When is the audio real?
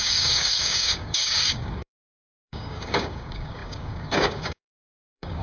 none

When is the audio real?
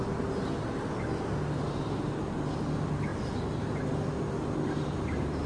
0.0-5.5